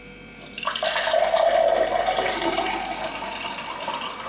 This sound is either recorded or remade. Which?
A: recorded